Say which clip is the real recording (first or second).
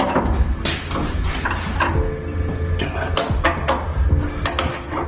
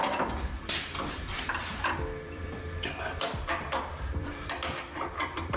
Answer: first